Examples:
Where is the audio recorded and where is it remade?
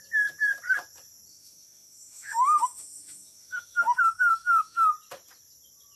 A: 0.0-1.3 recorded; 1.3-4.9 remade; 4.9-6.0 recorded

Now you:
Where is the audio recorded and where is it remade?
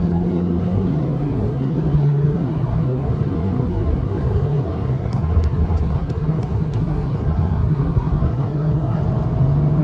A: 0.0-9.0 remade; 9.0-9.8 recorded